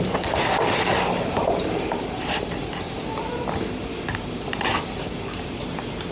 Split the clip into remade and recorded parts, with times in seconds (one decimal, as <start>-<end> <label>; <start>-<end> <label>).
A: 0.0-1.4 recorded; 1.4-5.1 remade; 5.1-6.1 recorded